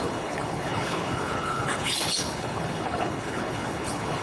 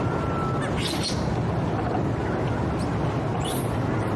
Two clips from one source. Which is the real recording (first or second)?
second